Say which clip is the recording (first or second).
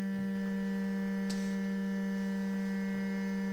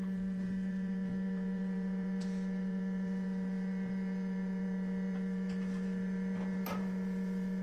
first